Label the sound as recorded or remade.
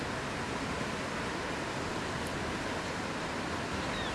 recorded